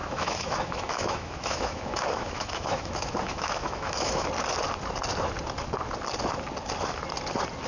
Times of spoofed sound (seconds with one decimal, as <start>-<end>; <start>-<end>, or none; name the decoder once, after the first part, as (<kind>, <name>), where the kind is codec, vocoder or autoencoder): 0.0-4.3 (autoencoder, DAC-VAE)